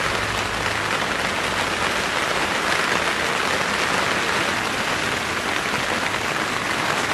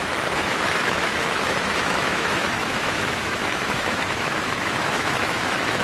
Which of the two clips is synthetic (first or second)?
second